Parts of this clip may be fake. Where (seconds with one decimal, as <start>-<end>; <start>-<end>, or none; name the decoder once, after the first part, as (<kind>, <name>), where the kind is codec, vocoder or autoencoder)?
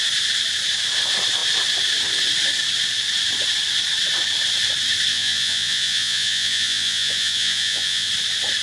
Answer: 5.1-8.1 (vocoder, Vocos)